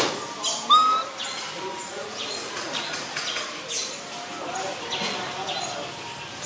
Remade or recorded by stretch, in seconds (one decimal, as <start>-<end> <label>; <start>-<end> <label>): 0.0-1.9 recorded; 1.9-3.4 remade; 3.4-6.5 recorded